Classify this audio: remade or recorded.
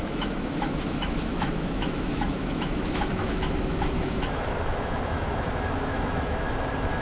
remade